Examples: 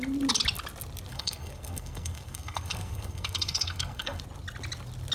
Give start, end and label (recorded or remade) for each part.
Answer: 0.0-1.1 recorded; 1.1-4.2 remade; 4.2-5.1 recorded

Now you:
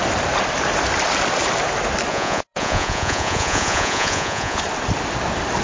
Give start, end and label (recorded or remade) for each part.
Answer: 0.0-2.1 recorded; 2.1-4.6 remade; 4.6-5.6 recorded